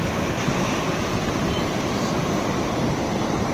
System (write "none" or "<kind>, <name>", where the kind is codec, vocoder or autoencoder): none